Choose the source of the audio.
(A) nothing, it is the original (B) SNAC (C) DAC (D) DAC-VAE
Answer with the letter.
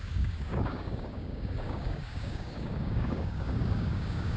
C